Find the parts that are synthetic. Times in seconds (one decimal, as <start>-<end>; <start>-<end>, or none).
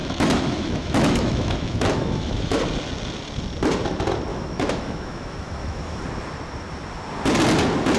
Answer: 0.0-2.6; 4.3-6.0